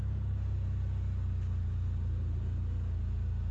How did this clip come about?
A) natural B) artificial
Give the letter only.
A